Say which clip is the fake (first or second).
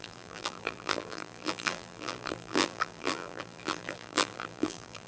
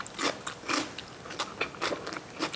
first